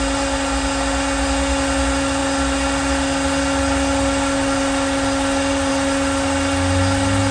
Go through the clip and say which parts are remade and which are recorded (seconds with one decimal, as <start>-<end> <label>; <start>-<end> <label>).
0.0-7.3 recorded